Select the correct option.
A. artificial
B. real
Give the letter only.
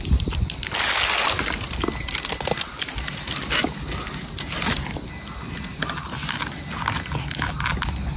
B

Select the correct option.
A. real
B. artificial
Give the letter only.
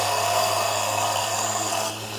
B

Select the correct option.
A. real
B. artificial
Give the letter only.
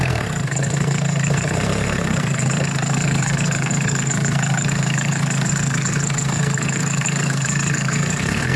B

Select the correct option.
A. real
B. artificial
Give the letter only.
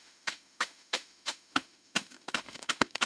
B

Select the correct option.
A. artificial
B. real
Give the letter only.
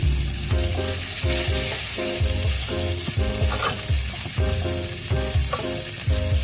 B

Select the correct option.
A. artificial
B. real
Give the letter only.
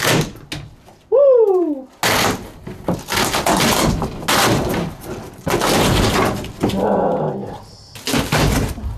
B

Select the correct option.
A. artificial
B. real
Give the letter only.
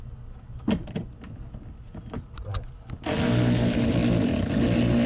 B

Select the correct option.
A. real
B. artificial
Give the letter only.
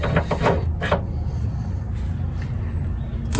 A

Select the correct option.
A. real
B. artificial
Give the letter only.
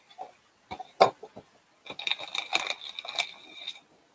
A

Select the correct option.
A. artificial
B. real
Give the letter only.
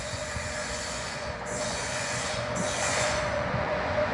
A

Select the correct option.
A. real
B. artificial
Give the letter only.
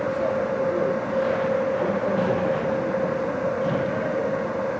A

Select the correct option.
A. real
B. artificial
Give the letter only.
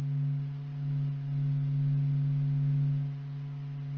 A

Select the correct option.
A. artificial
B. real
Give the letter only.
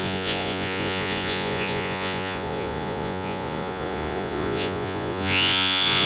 A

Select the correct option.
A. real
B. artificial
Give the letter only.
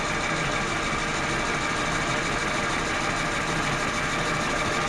A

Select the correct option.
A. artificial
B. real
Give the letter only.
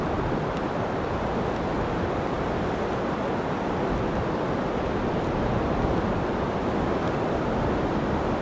B